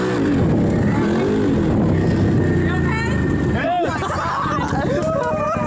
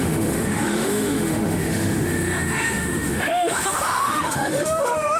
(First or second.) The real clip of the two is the first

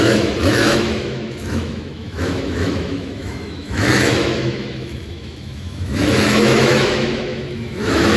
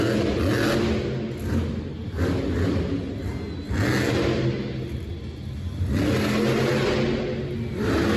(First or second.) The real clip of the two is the second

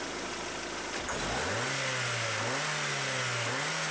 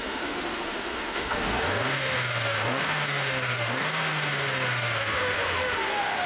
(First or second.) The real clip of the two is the first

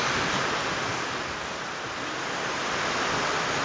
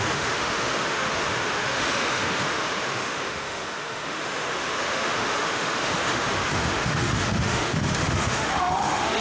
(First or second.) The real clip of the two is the first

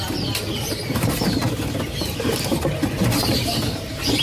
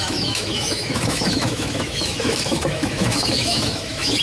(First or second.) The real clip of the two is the first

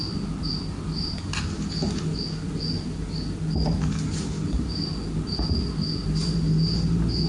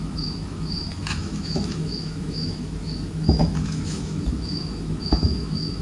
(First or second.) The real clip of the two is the first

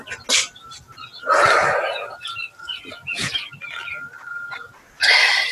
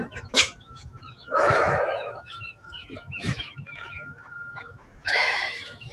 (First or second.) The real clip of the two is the first